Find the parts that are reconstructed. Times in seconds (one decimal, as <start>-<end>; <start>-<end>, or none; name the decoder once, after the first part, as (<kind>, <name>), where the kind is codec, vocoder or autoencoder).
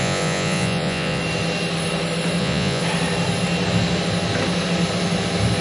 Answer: 0.0-1.2 (vocoder, Vocos); 2.4-2.8